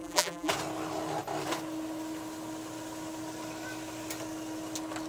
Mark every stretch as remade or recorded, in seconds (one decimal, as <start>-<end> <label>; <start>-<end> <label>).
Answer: 0.0-0.5 remade; 0.5-5.1 recorded